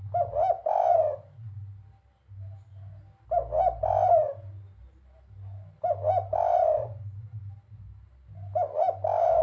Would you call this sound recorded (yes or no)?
yes